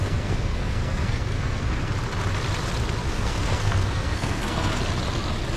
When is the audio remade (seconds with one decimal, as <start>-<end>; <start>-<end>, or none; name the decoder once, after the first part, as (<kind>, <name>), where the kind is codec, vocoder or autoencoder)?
0.0-1.9 (codec, SNAC); 3.0-4.8